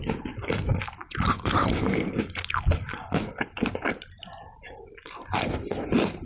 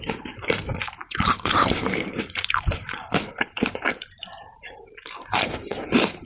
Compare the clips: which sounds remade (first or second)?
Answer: second